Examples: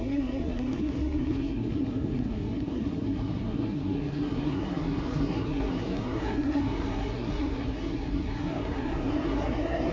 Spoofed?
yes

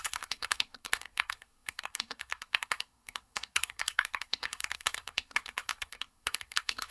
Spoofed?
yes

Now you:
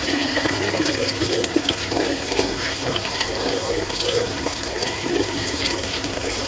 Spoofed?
yes